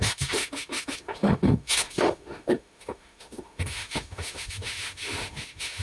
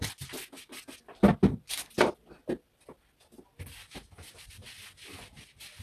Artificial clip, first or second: first